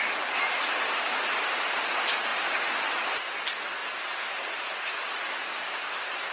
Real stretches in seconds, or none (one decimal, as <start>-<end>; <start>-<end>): 0.0-6.3

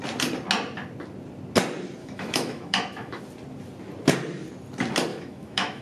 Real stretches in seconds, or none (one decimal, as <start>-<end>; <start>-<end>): 0.0-2.0; 3.2-5.1

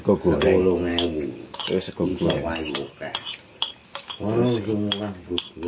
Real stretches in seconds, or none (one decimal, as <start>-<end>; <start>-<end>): 0.0-0.9; 1.6-2.1; 2.7-3.8; 4.6-5.7

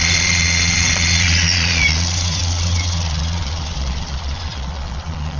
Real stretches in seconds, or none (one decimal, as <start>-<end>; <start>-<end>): none